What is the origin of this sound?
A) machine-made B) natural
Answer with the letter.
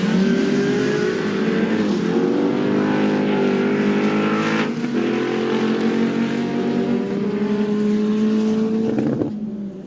B